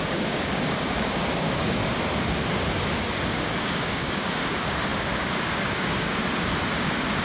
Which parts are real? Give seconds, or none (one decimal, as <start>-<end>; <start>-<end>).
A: 1.8-2.8